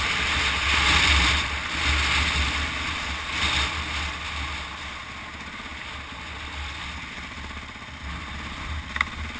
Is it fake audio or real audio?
real